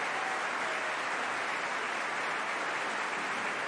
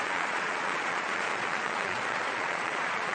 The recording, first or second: first